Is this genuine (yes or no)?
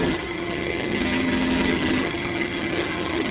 no